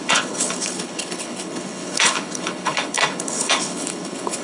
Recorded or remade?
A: remade